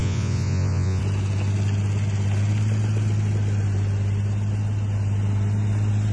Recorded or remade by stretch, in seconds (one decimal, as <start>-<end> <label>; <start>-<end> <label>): 0.0-1.0 remade; 1.0-6.1 recorded